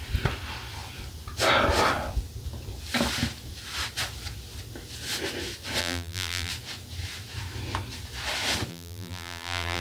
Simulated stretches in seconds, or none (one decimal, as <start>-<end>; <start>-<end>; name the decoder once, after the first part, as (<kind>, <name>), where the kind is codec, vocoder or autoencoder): 5.8-6.5 (vocoder, BigVGAN v2); 8.7-9.8